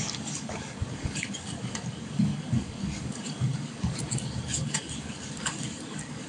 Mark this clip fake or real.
fake